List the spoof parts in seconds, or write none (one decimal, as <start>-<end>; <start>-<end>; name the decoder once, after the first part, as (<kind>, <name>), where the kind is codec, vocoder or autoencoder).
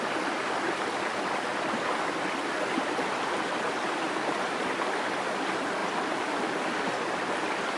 none